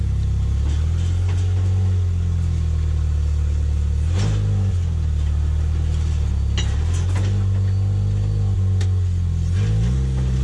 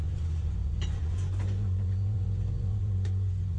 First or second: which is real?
first